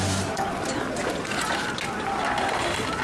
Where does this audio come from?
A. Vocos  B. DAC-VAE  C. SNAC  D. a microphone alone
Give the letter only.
D